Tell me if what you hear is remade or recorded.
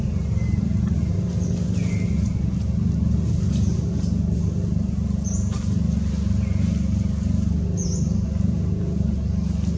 recorded